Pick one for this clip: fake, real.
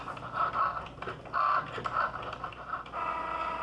real